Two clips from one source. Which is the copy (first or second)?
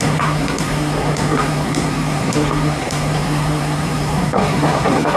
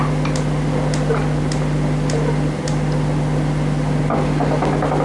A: first